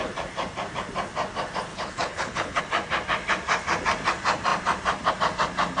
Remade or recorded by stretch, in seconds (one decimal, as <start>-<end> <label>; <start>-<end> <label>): 0.0-1.7 recorded; 1.7-2.6 remade; 2.6-5.8 recorded